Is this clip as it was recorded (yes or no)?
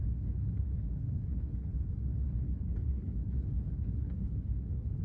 no